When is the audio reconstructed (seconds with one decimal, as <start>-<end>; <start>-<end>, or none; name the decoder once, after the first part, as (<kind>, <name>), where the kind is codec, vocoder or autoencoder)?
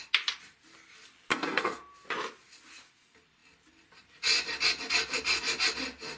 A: 1.3-1.8 (codec, SNAC)